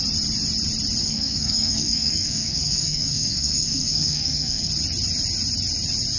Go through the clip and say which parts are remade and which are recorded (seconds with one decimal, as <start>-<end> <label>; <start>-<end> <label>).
0.0-1.0 recorded; 1.0-4.7 remade; 4.7-6.2 recorded